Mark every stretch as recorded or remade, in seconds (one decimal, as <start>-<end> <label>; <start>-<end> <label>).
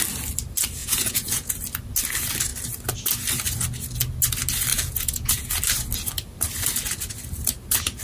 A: 0.0-0.8 recorded; 0.8-1.5 remade; 1.5-4.7 recorded; 4.7-5.5 remade; 5.5-8.0 recorded